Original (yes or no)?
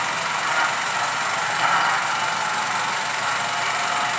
yes